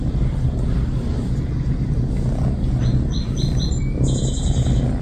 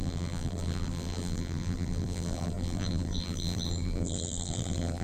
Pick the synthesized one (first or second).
second